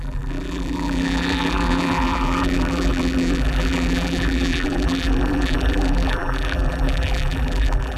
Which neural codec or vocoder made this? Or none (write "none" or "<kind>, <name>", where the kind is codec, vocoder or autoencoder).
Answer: vocoder, BigVGAN v2